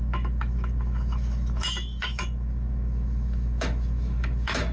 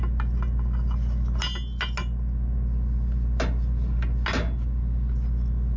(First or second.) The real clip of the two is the second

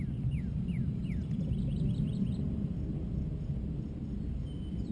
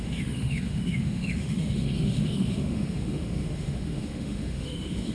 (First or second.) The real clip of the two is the first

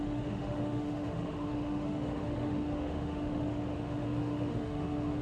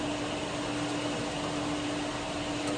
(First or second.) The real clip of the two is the second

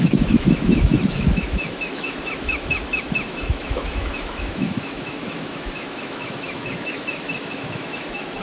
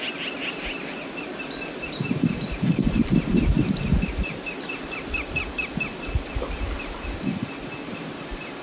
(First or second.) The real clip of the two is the second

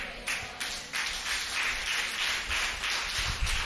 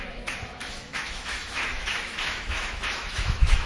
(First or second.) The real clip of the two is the first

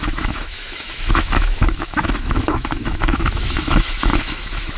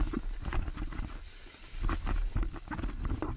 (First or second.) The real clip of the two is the second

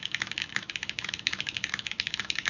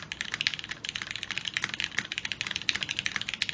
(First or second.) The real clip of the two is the second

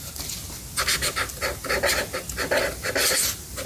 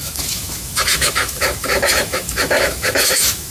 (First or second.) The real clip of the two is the first